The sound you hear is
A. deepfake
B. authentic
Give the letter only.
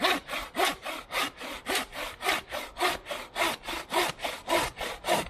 B